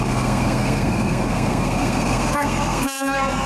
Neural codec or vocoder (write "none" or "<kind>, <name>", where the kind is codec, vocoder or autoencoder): codec, SNAC